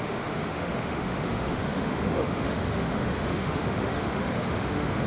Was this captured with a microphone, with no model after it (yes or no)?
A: no